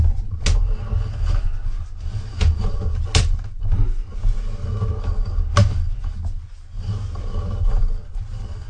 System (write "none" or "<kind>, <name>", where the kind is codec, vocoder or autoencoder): none